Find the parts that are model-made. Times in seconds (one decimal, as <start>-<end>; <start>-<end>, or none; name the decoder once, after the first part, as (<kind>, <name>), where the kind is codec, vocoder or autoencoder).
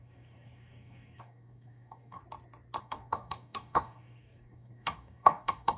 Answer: 0.0-2.2 (codec, DAC); 2.8-5.8